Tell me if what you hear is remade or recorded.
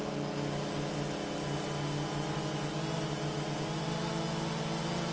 recorded